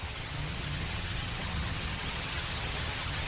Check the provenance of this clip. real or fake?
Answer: fake